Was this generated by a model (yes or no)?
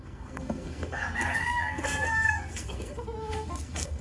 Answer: yes